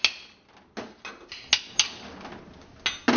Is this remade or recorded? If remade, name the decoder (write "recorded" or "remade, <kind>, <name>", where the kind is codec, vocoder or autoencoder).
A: recorded